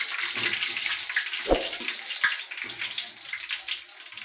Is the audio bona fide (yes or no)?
yes